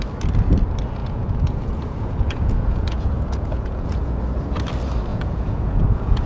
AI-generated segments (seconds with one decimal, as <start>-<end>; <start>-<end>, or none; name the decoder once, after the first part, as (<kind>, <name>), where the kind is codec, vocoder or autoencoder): 1.0-4.2 (vocoder, Vocos); 5.1-6.3

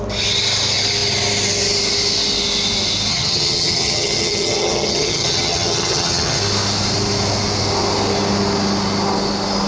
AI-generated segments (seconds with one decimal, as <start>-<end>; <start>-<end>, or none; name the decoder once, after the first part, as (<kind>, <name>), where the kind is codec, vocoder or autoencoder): 3.1-6.4 (vocoder, HiFi-GAN)